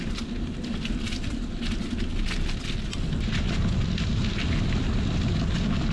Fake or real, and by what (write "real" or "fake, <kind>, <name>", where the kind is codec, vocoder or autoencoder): real